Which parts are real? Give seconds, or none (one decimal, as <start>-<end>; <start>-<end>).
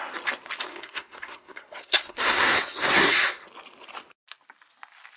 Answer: 0.0-0.7; 3.1-5.2